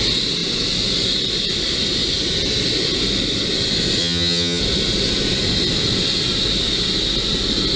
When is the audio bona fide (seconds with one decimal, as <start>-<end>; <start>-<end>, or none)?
0.0-4.0; 4.6-7.8